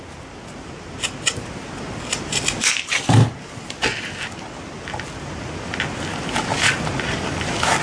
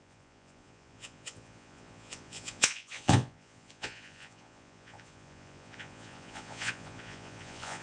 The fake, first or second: second